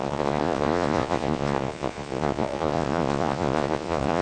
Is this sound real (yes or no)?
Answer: no